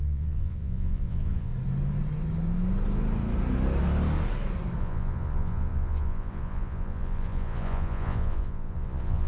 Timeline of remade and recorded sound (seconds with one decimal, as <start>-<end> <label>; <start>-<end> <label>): 0.0-1.5 remade; 1.5-4.8 recorded; 4.8-9.3 remade